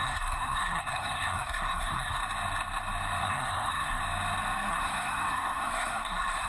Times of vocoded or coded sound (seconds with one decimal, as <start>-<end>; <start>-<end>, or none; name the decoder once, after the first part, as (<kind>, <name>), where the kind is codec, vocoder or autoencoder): 0.0-2.2 (codec, SNAC); 3.2-4.0; 4.7-6.5